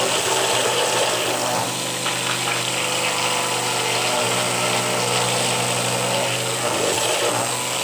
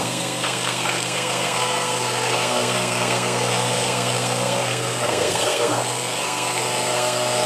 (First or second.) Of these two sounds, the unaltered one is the first